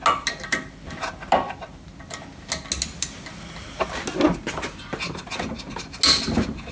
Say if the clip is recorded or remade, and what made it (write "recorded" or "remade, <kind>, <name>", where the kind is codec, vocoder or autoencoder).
recorded